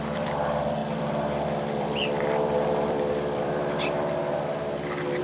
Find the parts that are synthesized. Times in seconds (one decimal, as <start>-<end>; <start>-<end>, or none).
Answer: 0.0-4.2